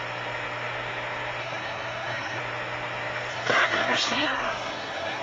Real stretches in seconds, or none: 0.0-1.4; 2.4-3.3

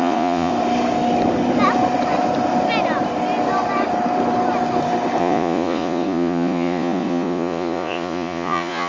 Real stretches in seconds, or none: 0.5-5.2

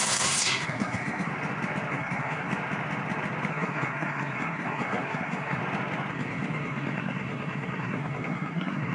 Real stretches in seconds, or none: 1.3-1.9; 2.5-3.5; 5.6-6.1

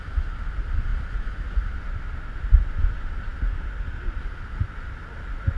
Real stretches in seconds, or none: 0.0-5.6

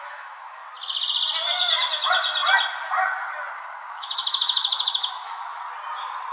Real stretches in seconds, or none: 0.6-3.6; 5.5-6.3

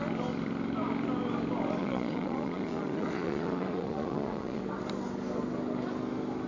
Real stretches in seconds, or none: 0.0-1.8; 4.6-6.5

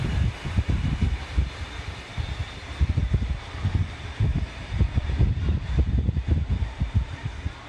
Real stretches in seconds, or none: 0.0-4.3; 5.4-7.7

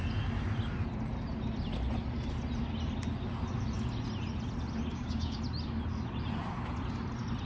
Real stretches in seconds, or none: 0.0-4.9; 5.4-7.5